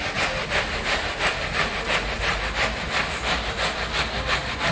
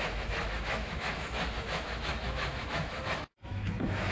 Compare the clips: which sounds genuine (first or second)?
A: first